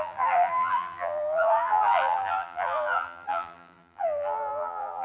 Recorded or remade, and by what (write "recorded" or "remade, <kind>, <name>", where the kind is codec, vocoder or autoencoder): remade, vocoder, BigVGAN v2